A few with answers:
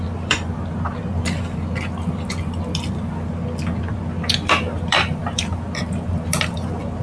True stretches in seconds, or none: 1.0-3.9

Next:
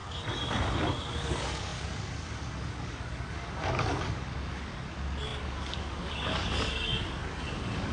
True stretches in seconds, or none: none